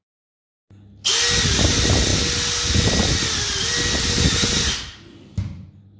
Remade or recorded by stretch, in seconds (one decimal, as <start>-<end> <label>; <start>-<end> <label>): 0.0-6.0 recorded